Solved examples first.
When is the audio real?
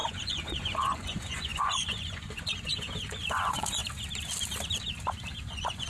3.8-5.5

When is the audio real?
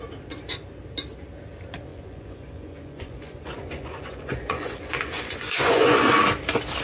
0.0-1.9; 6.0-6.8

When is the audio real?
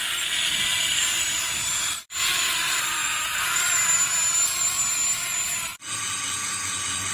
0.0-3.0; 3.6-5.7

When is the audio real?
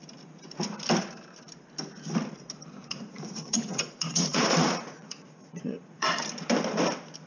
0.0-2.8; 6.2-7.3